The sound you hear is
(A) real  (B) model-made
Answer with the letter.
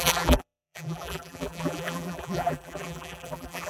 B